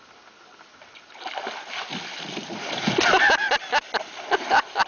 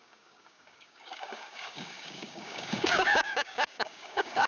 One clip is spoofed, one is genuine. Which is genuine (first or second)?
first